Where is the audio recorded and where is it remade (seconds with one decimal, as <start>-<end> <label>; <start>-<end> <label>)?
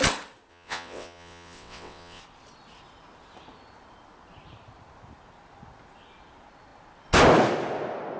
0.0-0.5 recorded; 0.5-2.2 remade; 2.2-8.2 recorded